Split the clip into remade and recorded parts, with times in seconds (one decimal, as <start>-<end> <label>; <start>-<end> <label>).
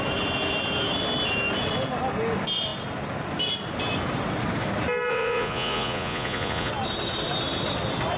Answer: 0.0-5.1 recorded; 5.1-6.7 remade; 6.7-8.2 recorded